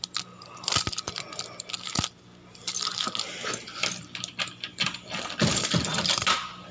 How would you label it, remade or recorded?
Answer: recorded